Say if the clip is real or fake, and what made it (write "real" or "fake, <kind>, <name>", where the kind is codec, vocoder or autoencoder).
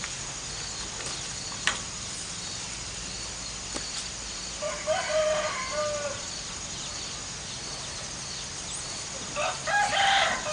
real